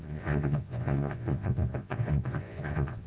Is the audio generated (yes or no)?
yes